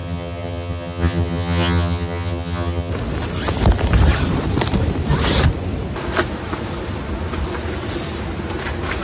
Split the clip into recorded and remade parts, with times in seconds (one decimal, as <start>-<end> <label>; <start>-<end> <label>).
0.0-2.9 remade; 2.9-9.0 recorded